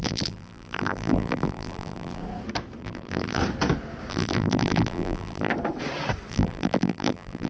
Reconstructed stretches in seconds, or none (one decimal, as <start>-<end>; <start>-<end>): 0.0-2.2; 2.8-3.4; 4.1-5.5; 6.3-7.5